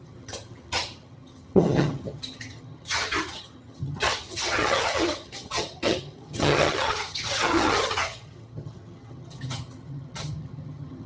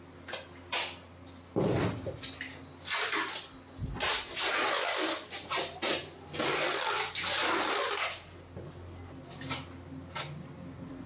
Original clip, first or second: second